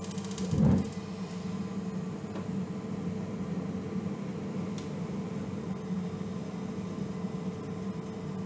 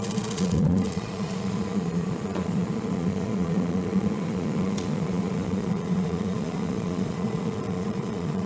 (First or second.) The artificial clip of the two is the second